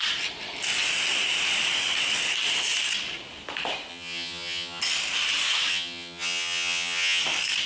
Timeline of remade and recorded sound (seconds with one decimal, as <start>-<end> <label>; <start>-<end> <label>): 0.0-3.9 recorded; 3.9-4.8 remade; 4.8-5.7 recorded; 5.7-7.2 remade; 7.2-7.7 recorded